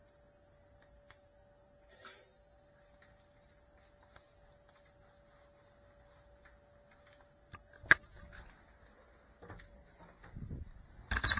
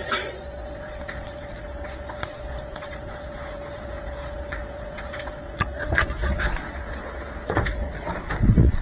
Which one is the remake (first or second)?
second